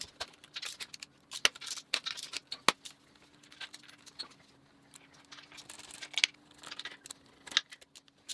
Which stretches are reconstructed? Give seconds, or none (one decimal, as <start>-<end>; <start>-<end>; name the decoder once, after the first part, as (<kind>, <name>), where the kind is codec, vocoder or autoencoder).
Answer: none